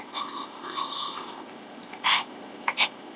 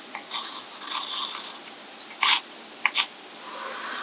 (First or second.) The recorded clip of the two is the second